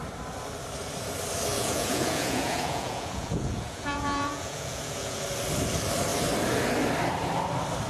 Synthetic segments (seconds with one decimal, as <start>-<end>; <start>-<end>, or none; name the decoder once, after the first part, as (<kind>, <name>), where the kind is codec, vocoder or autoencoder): 1.5-5.2 (vocoder, Vocos)